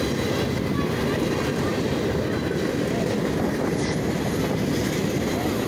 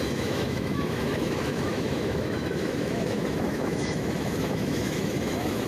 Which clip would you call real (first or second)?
first